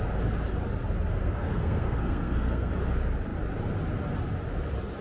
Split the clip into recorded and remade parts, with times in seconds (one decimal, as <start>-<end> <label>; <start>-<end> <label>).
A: 0.0-1.2 recorded; 1.2-2.7 remade; 2.7-5.0 recorded